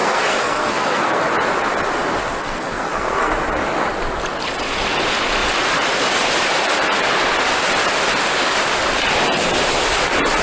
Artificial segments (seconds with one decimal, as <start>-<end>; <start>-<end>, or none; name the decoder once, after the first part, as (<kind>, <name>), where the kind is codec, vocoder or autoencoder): 0.0-1.3 (codec, SNAC); 2.4-3.3